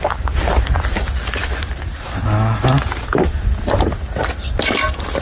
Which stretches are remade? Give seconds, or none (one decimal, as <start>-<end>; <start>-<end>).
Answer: none